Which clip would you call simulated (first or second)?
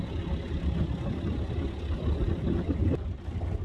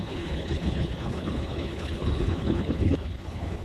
second